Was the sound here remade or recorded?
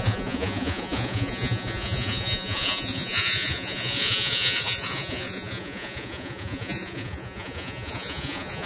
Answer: remade